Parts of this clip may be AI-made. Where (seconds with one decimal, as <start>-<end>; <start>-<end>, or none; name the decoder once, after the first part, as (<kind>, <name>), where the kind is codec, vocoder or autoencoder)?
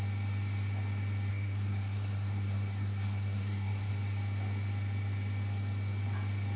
1.3-3.9 (codec, SNAC)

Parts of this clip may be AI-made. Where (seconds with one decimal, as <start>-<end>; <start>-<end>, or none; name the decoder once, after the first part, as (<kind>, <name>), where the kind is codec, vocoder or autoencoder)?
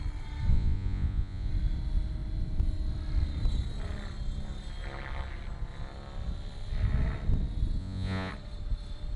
0.5-1.5 (vocoder, Vocos); 7.8-8.3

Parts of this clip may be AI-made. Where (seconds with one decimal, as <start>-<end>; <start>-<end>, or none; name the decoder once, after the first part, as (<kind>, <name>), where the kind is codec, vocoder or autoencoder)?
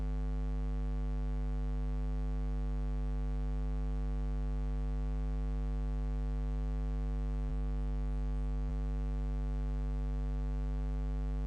7.5-8.7 (autoencoder, DAC-VAE)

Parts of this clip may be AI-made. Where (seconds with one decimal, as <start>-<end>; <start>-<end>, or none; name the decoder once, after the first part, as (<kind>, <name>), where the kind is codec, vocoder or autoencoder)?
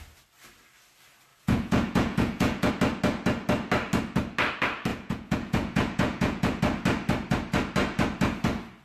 1.3-2.7 (vocoder, Vocos); 4.9-6.6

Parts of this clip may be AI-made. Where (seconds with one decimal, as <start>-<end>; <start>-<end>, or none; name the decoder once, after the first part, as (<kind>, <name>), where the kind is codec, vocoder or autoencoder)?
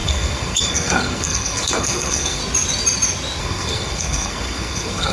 0.0-2.4 (codec, SNAC); 3.4-5.1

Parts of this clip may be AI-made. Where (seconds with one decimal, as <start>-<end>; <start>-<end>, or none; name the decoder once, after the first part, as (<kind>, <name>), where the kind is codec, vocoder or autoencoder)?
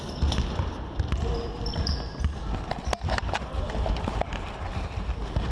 none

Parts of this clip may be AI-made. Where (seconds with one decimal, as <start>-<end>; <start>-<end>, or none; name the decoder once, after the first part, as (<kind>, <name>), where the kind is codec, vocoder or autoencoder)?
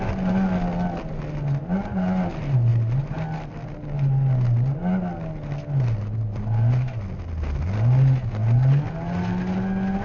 none